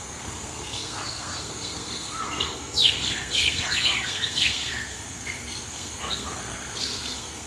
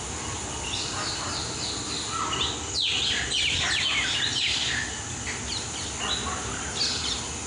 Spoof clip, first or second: first